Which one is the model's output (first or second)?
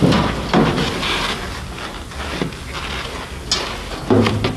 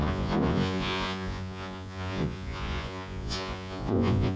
second